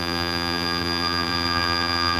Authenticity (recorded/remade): remade